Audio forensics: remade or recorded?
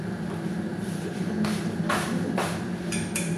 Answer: remade